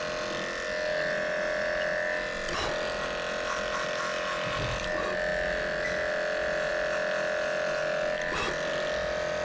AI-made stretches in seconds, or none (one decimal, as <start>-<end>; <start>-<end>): none

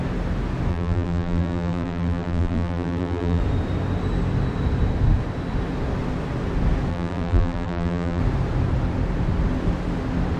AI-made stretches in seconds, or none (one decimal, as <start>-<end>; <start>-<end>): 0.7-3.4; 6.9-8.2

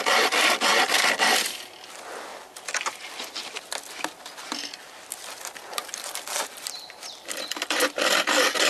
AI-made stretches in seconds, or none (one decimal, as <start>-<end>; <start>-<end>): none